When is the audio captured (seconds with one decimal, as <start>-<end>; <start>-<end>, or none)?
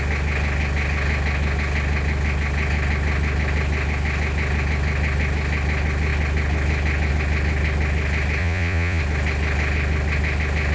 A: 0.0-8.4; 9.0-10.7